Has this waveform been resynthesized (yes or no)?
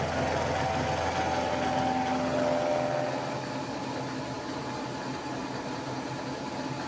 no